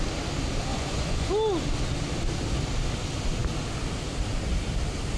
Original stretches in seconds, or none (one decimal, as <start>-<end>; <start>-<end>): 0.0-0.7; 1.3-5.2